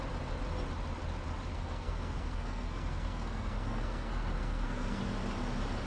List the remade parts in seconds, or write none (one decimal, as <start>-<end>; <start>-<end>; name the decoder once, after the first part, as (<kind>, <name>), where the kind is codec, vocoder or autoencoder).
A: 1.5-5.0 (codec, SNAC)

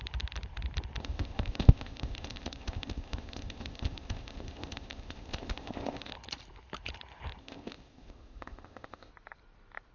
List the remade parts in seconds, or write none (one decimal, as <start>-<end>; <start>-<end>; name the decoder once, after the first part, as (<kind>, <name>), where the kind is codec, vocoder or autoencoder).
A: 1.0-6.1 (codec, ZipCodec); 7.4-9.1

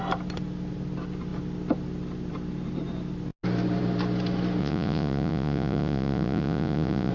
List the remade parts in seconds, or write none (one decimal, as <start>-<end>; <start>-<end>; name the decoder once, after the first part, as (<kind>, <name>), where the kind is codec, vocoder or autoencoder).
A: 4.6-7.1 (vocoder, Vocos)

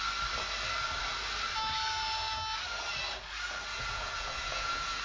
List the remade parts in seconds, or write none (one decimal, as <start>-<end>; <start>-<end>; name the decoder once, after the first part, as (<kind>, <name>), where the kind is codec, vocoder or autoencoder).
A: 3.7-5.0 (vocoder, Vocos)

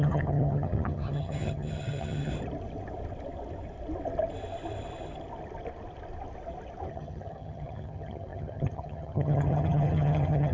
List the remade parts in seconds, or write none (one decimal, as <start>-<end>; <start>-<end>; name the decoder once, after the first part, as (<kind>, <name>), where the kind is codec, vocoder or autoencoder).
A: 0.0-2.3 (vocoder, HiFi-GAN); 6.9-10.5

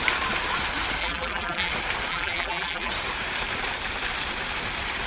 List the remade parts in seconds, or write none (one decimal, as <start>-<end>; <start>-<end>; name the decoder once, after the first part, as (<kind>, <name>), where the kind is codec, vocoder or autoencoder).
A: 1.0-1.7 (vocoder, BigVGAN v2); 2.1-2.9

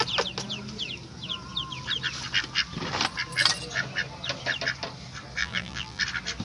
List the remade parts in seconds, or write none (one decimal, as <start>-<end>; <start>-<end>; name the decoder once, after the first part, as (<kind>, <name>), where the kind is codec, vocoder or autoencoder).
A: 5.4-6.0 (vocoder, BigVGAN v2)